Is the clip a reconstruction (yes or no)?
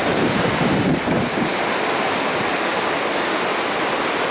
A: no